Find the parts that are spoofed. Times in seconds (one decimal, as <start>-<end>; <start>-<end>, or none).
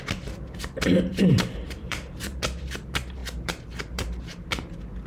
1.1-2.2; 3.2-4.5